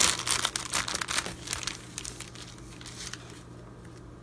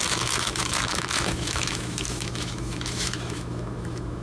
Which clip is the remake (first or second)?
second